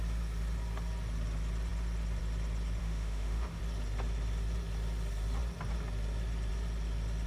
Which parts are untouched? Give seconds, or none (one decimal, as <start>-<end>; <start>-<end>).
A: 0.0-2.8; 3.6-7.3